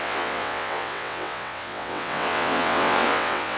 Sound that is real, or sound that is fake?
fake